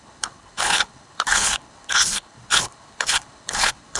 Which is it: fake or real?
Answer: fake